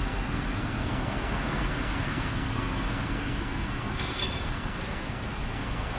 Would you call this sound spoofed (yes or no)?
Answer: yes